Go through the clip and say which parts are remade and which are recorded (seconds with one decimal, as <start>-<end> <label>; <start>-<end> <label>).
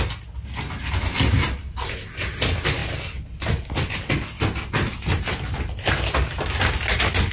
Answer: 0.0-7.3 recorded